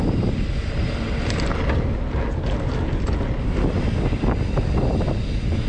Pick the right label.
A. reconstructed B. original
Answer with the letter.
B